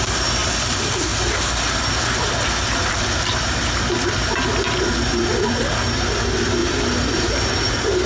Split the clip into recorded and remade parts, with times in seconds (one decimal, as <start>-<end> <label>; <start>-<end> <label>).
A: 0.0-2.9 recorded; 2.9-3.6 remade; 3.6-6.6 recorded; 6.6-8.1 remade